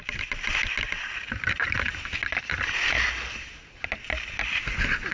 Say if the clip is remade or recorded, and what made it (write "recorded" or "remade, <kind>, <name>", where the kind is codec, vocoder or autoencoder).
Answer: recorded